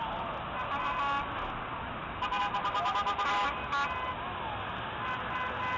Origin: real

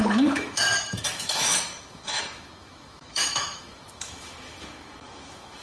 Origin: fake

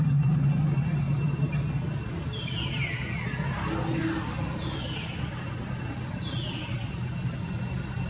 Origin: real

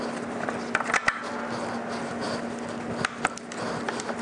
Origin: real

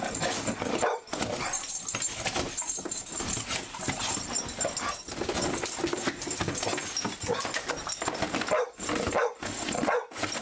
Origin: real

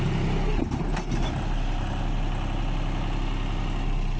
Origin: real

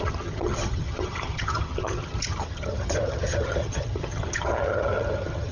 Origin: fake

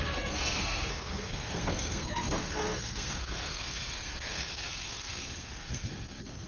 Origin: fake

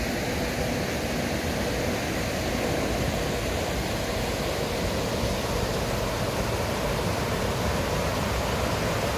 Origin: real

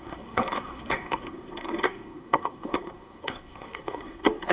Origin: fake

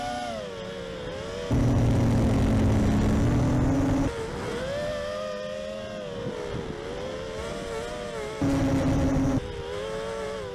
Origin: real